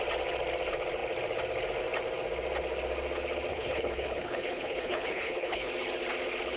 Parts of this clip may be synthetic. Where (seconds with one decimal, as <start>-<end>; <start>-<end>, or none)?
3.5-5.7